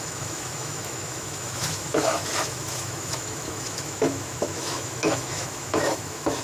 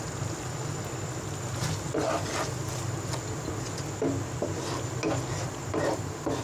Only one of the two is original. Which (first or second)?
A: second